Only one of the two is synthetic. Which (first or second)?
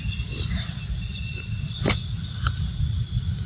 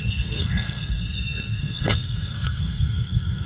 second